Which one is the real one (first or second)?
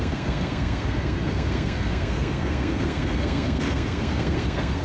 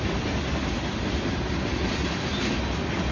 second